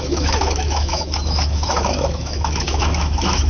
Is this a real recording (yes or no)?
no